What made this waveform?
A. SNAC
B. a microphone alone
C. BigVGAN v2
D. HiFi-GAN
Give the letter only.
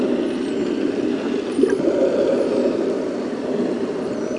B